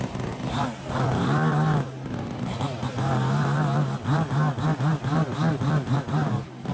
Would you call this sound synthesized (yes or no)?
no